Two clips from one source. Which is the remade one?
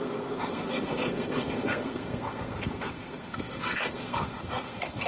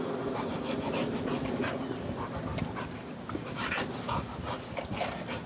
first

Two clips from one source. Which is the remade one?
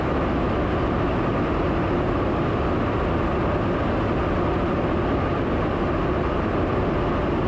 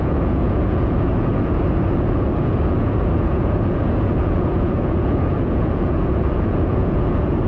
second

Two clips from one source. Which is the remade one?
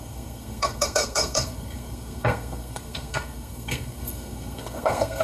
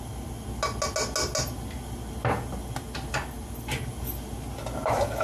first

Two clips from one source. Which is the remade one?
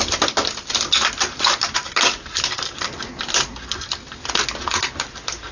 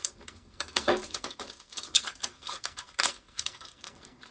second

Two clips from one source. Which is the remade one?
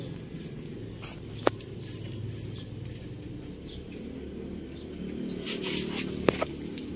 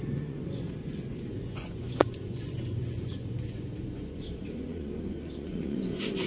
second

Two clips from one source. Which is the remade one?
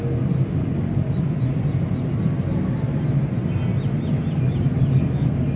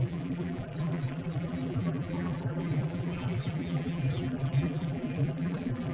second